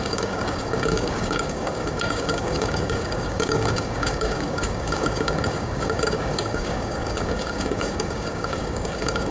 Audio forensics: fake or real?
fake